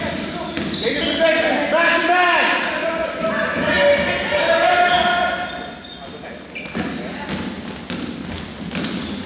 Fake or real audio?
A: real